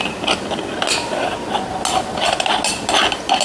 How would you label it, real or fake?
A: real